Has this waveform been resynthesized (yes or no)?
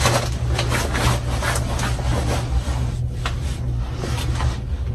no